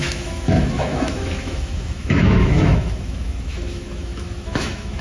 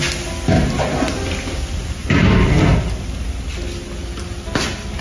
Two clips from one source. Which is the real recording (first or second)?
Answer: second